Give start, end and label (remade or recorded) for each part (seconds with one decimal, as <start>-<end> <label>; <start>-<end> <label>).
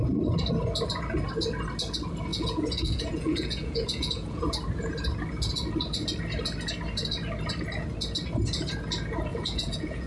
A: 0.0-2.3 recorded; 2.3-4.4 remade; 4.4-9.3 recorded; 9.3-10.1 remade